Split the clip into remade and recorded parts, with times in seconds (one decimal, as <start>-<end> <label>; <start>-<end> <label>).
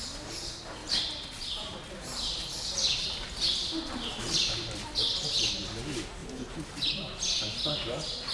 0.0-0.8 recorded; 0.8-5.5 remade; 5.5-6.2 recorded; 6.2-6.9 remade; 6.9-8.3 recorded